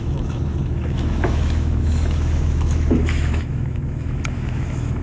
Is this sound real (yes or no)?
no